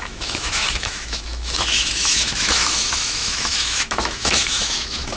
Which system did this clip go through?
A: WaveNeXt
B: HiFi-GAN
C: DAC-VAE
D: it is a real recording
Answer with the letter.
C